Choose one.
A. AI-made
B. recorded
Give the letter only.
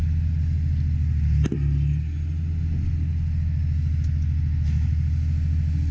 B